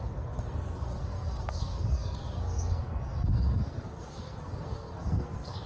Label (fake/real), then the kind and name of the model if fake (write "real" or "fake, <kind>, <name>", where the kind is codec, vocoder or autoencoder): fake, codec, SNAC